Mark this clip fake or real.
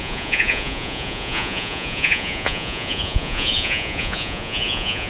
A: fake